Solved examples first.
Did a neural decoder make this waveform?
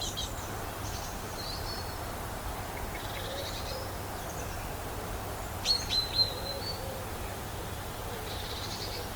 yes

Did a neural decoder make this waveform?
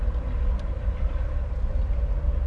no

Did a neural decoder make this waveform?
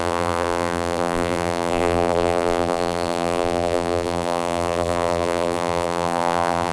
yes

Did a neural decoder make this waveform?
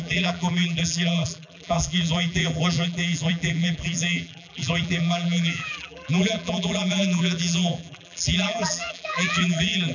yes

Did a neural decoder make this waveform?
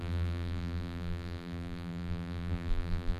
yes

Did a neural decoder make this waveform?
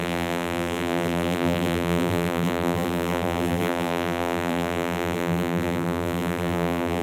yes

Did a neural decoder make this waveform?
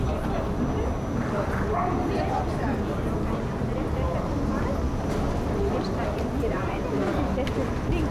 no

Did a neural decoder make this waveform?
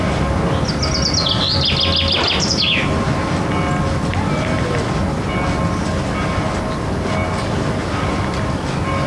no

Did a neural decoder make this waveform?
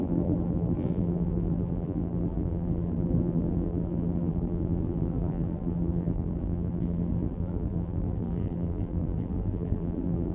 yes